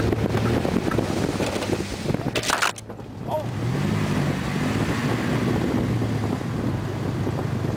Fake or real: real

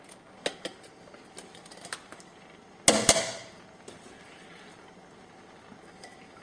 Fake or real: real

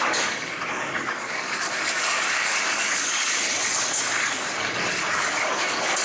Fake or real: fake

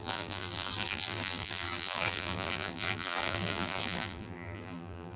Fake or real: fake